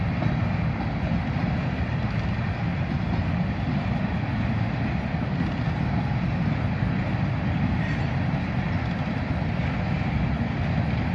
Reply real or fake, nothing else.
real